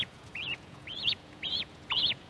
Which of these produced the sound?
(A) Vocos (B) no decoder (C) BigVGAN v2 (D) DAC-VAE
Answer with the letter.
A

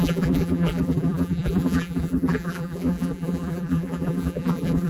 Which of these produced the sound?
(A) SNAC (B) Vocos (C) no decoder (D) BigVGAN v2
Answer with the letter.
D